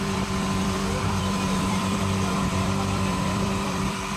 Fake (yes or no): yes